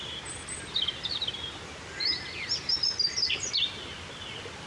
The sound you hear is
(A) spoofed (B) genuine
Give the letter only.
B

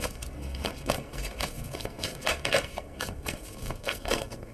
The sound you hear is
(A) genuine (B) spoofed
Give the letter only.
B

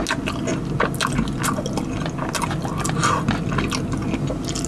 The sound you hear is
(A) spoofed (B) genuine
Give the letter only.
B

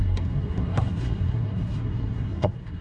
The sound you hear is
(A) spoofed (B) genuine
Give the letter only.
A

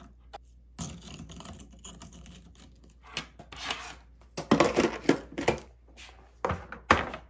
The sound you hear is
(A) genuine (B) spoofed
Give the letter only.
A